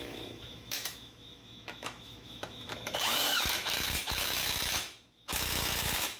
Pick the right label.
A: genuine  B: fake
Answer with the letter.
B